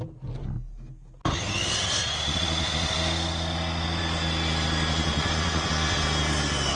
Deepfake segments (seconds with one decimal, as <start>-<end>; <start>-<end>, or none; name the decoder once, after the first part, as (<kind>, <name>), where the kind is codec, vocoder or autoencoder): 5.1-5.7 (vocoder, Vocos)